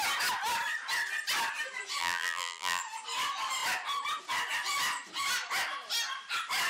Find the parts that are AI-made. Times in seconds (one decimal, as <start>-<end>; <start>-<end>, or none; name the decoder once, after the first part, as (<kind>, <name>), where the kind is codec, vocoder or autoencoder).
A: 2.0-2.8 (vocoder, BigVGAN v2)